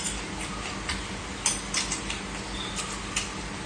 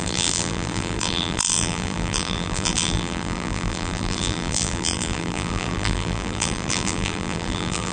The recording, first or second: first